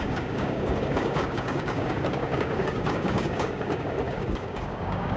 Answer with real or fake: fake